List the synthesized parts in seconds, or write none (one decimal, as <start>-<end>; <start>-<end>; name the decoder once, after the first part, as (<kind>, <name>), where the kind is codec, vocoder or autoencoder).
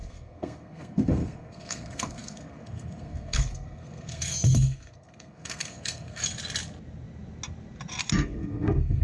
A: 0.0-6.2 (codec, SNAC); 8.1-9.0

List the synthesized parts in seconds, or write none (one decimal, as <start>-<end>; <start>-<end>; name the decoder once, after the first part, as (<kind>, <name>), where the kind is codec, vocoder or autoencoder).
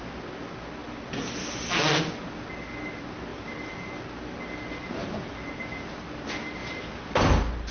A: 3.3-4.0 (vocoder, BigVGAN v2); 6.6-7.7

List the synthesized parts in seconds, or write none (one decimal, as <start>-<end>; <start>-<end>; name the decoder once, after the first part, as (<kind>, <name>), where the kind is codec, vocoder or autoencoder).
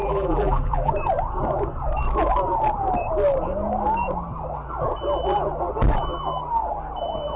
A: 0.0-0.9 (vocoder, BigVGAN v2)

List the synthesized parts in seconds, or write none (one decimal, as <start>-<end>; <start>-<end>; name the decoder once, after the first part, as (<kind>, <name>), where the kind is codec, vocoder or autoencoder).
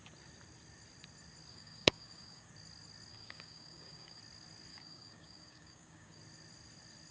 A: 1.5-2.5 (codec, DAC); 3.1-4.2; 4.7-6.2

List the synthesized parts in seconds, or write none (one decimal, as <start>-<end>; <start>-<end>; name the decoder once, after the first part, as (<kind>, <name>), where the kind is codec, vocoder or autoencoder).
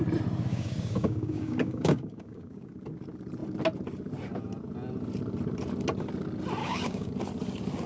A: 0.5-2.7 (codec, DAC); 6.6-7.1